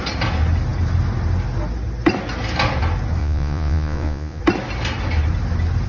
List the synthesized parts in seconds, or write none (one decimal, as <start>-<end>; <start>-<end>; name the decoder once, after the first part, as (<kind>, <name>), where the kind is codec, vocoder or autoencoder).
3.2-4.4 (vocoder, Vocos)